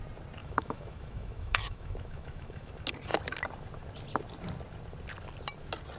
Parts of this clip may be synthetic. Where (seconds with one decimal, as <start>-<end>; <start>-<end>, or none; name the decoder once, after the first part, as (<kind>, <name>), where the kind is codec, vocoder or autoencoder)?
0.4-2.7 (autoencoder, DAC-VAE)